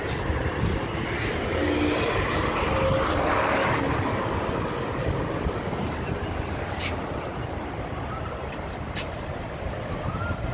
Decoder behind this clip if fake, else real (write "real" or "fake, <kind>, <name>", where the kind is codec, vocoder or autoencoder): real